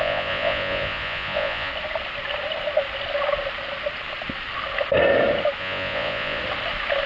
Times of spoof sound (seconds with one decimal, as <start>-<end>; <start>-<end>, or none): 0.0-1.7; 5.6-6.4